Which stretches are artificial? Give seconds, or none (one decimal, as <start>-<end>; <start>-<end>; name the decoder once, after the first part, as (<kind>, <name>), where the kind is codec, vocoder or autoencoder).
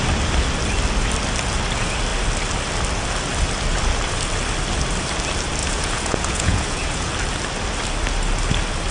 5.6-7.1 (vocoder, Vocos)